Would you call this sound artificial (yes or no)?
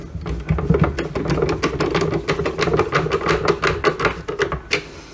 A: no